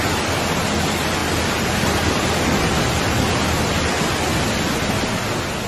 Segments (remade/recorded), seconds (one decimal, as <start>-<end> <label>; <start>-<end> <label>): 0.0-1.2 recorded; 1.2-3.3 remade; 3.3-5.7 recorded